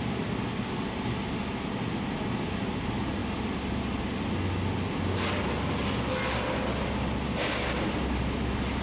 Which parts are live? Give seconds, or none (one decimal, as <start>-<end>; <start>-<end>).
0.0-8.8